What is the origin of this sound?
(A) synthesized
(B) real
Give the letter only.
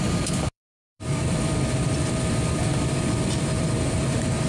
A